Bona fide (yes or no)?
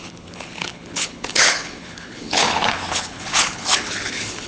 no